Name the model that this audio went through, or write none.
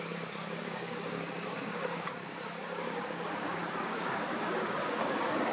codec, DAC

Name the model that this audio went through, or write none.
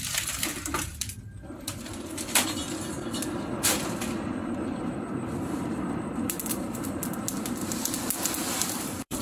vocoder, BigVGAN v2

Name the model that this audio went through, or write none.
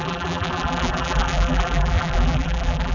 vocoder, BigVGAN v2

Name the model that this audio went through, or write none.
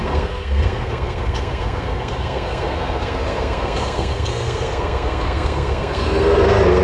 codec, SNAC